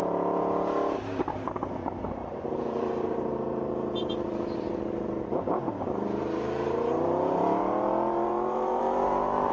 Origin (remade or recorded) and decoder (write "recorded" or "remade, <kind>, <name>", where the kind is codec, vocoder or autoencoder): remade, vocoder, BigVGAN v2